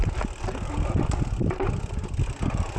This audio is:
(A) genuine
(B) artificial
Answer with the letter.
A